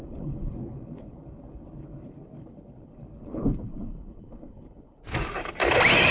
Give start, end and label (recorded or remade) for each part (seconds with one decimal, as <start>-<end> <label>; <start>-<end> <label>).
0.0-5.0 remade; 5.0-6.1 recorded